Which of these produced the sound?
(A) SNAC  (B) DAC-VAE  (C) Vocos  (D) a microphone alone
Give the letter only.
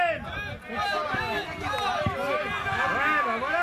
D